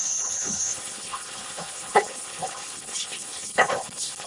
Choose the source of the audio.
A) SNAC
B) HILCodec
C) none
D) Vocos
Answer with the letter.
B